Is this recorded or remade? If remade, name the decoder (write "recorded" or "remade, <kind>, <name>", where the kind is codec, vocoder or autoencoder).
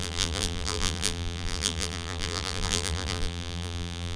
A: remade, vocoder, BigVGAN v2